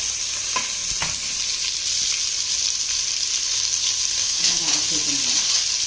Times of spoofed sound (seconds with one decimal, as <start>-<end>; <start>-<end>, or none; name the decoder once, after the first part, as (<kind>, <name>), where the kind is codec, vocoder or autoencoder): 4.2-4.7 (autoencoder, DAC-VAE)